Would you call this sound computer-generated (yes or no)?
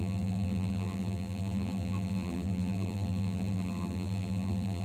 yes